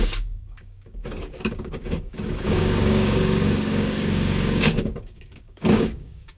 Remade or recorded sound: remade